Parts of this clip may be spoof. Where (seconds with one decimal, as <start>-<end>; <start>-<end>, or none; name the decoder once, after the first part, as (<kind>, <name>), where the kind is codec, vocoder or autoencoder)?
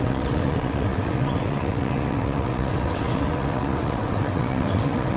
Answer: 0.0-5.2 (vocoder, WaveNeXt)